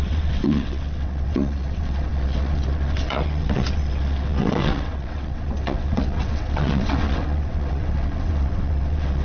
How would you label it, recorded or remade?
remade